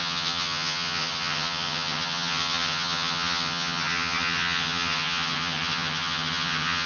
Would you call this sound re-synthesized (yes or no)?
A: yes